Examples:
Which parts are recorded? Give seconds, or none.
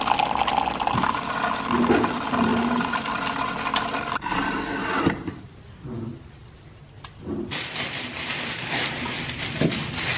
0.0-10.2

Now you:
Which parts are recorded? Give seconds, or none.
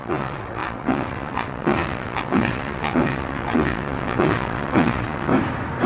5.3-5.9